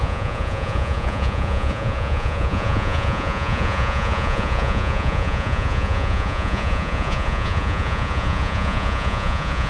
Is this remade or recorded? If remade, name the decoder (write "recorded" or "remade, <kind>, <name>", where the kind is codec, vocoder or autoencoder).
remade, vocoder, Vocos